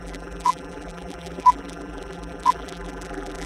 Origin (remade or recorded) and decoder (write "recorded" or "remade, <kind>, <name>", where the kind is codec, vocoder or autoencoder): remade, vocoder, BigVGAN v2